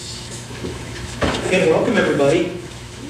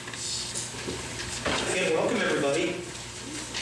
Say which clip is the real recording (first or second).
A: second